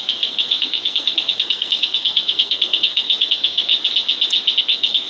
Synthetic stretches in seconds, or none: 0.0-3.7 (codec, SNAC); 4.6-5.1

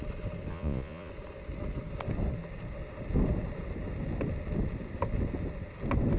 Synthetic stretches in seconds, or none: 0.5-1.1 (vocoder, Vocos)

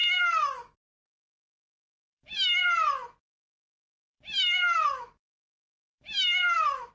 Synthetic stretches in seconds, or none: 0.0-0.9 (autoencoder, DAC-VAE); 2.0-2.6; 3.5-6.9

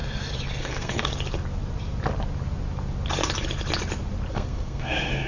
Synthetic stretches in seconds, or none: 0.6-1.1 (codec, SNAC); 4.3-5.3

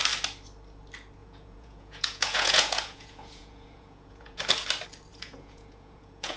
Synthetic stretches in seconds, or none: 1.2-4.4 (vocoder, Vocos); 5.1-6.4

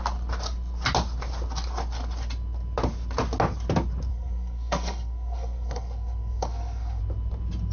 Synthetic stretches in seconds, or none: 4.1-7.0 (codec, SNAC)

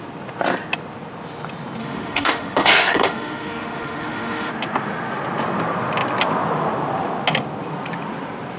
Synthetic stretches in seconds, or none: 1.8-4.5 (autoencoder, DAC-VAE)